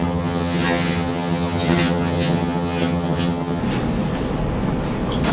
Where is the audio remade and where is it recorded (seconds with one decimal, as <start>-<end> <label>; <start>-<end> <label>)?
0.0-3.6 remade; 3.6-5.3 recorded